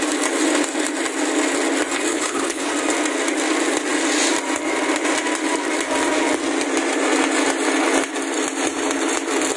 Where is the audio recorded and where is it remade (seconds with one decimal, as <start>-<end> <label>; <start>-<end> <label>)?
0.0-2.1 recorded; 2.1-2.7 remade; 2.7-9.6 recorded